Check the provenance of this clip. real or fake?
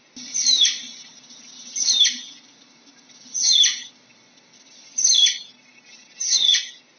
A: real